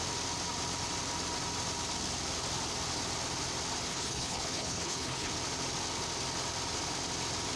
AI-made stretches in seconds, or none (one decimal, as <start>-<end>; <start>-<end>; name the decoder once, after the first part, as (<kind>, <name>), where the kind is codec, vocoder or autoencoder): 3.9-5.3 (codec, HILCodec)

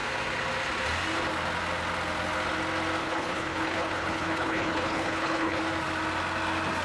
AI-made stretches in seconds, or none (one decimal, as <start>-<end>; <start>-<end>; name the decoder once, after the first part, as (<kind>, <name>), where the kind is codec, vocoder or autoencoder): 3.0-5.6 (codec, HILCodec)

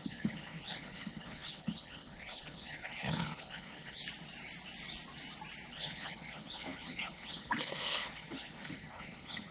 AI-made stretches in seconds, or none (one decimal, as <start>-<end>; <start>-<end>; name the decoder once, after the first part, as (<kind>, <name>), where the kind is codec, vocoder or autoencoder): 0.0-4.0 (codec, HILCodec); 5.7-9.5

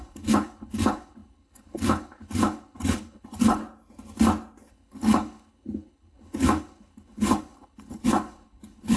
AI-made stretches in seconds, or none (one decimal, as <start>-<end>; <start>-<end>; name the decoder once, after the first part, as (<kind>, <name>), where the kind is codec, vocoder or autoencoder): 0.0-3.6 (codec, HILCodec); 4.7-9.0

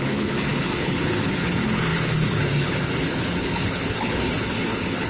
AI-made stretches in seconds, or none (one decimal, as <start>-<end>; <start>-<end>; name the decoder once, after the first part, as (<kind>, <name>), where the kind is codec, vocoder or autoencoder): 0.0-5.1 (codec, HILCodec)

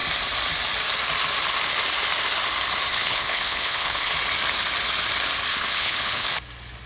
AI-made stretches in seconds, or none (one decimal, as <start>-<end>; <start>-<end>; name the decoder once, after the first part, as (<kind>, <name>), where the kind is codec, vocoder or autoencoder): 2.9-4.1 (codec, HILCodec); 5.5-6.3

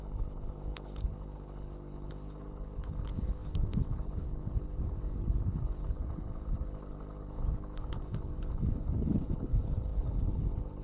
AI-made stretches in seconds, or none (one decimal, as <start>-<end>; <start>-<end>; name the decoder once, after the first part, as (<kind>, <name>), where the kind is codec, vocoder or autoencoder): 0.0-10.8 (codec, HILCodec)

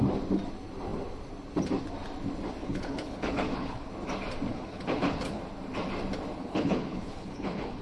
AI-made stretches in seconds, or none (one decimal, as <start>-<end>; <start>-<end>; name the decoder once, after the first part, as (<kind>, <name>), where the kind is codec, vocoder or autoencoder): 2.6-3.9 (codec, HILCodec); 4.5-5.4; 6.4-7.8